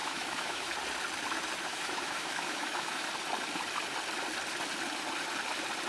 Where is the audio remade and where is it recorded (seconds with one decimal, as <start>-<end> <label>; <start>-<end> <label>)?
0.0-0.7 remade; 0.7-1.7 recorded; 1.7-3.1 remade; 3.1-5.9 recorded